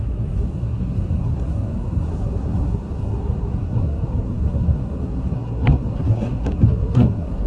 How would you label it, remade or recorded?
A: remade